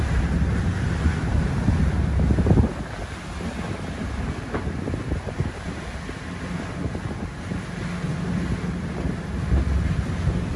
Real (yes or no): yes